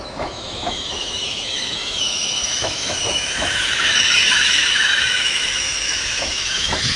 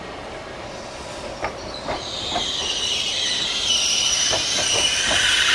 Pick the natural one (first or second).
second